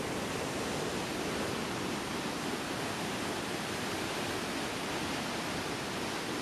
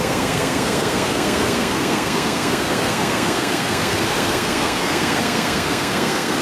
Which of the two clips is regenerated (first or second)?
second